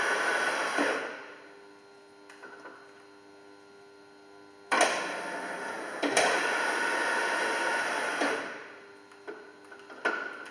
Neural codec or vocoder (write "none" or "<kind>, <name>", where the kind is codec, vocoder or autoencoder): none